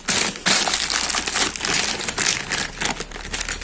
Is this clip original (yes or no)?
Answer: yes